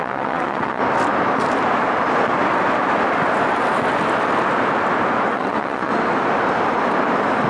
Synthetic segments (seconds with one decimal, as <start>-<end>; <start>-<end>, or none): 0.0-0.8; 5.3-5.9